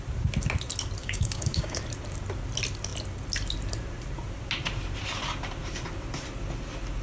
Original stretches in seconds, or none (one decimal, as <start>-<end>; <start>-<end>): 0.0-1.0; 1.8-7.0